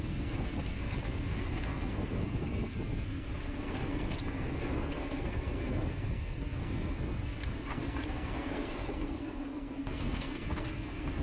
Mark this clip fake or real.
fake